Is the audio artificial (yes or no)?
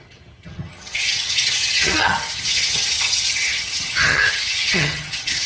yes